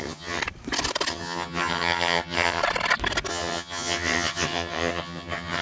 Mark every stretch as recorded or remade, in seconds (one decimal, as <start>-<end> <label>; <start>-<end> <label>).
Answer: 0.0-0.4 remade; 0.4-1.1 recorded; 1.1-2.6 remade; 2.6-3.3 recorded; 3.3-5.6 remade